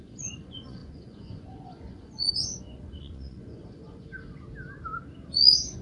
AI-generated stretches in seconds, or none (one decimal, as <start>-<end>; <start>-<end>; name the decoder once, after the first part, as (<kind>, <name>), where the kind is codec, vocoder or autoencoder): 0.0-4.1 (vocoder, Vocos); 5.3-5.8